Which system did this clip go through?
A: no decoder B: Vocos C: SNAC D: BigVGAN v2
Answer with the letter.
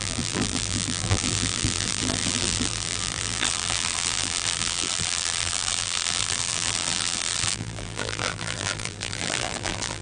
D